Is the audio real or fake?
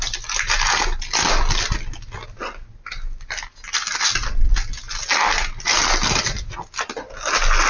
real